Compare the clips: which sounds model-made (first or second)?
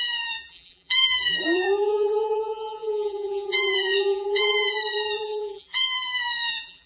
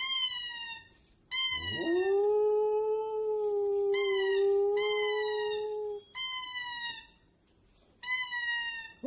first